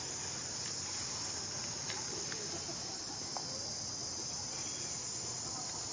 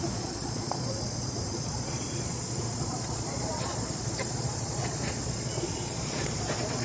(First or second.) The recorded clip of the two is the first